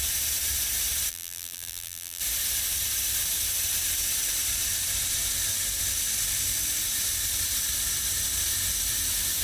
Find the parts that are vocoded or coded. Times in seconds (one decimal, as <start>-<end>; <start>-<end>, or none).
1.1-2.2